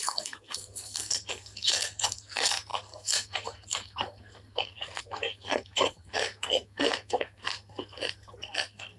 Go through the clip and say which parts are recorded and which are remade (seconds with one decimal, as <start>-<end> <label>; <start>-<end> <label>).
0.0-9.0 remade